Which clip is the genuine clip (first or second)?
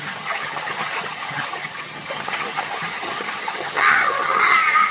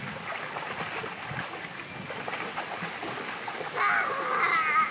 second